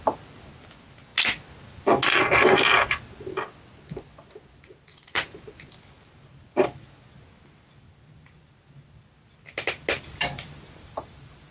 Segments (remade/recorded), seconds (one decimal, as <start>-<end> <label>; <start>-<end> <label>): 0.0-4.9 recorded; 4.9-5.6 remade; 5.6-11.5 recorded